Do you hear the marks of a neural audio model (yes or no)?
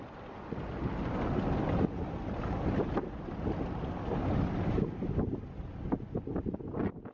no